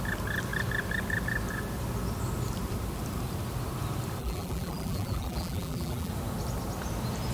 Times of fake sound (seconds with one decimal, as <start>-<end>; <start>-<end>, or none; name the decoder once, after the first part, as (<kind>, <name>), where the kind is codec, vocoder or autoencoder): 4.2-6.1 (vocoder, BigVGAN v2)